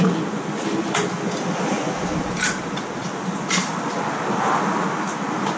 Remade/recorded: recorded